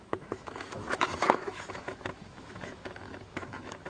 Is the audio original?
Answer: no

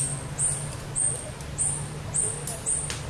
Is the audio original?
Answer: yes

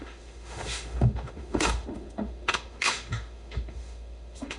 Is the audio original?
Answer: no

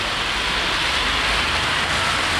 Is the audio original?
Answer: yes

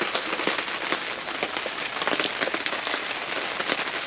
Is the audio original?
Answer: yes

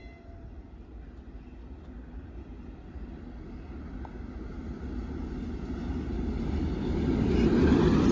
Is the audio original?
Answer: yes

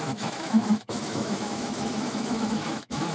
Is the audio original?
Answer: no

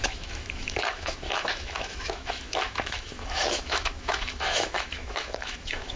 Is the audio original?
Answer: no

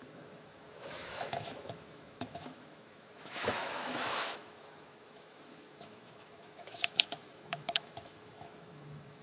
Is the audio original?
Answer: no